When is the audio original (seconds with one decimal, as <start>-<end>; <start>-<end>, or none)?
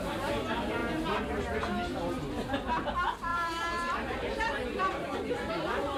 0.0-3.3; 5.5-6.0